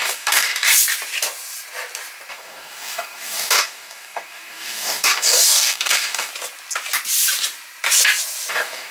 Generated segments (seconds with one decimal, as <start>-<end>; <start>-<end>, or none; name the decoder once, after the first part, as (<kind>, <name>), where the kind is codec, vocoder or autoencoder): 0.0-0.7 (codec, DAC); 2.3-6.3; 8.5-8.9